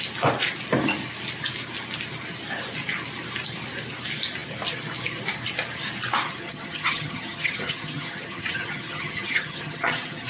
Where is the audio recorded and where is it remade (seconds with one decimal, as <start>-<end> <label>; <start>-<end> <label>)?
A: 0.0-6.4 recorded; 6.4-10.3 remade